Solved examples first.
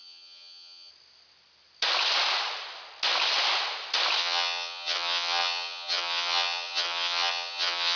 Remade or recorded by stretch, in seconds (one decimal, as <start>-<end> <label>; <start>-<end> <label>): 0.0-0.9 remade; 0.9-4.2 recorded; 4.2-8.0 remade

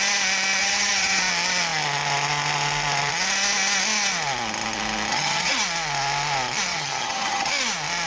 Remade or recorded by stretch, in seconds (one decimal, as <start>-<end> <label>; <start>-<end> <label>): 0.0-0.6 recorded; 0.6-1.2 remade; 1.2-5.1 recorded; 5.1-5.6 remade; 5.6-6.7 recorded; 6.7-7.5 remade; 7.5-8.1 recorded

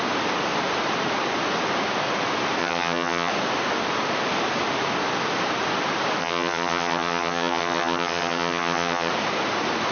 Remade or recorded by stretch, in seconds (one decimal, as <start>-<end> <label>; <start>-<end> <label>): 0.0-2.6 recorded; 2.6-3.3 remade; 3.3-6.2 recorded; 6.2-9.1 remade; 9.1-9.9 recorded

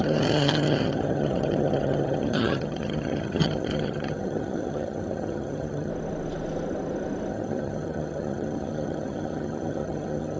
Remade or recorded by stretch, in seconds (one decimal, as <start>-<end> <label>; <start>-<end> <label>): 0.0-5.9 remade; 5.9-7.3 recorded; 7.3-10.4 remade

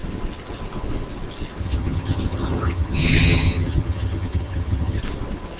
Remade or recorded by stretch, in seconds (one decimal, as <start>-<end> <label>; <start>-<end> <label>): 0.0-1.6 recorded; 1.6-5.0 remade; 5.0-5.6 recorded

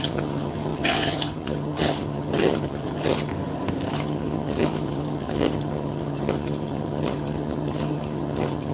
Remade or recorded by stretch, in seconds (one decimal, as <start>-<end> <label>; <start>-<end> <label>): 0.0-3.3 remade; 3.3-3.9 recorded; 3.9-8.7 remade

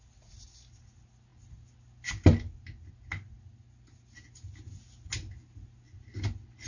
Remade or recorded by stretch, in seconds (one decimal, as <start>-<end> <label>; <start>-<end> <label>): 0.0-6.7 recorded